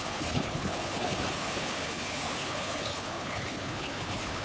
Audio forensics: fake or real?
fake